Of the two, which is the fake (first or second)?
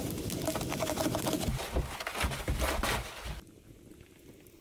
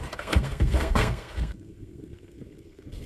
second